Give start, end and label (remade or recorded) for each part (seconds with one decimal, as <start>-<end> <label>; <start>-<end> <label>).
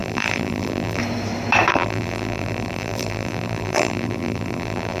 0.0-1.0 remade; 1.0-1.7 recorded; 1.7-5.0 remade